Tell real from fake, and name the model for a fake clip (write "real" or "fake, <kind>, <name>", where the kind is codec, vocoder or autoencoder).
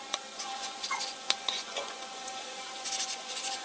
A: fake, vocoder, Vocos